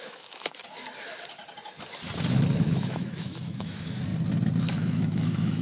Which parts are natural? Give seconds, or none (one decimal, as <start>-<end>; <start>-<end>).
0.6-2.5; 4.1-4.6